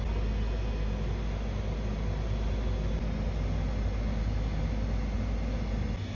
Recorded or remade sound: recorded